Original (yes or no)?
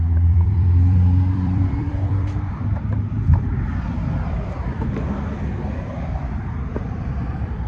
no